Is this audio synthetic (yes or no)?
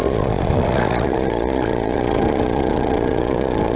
yes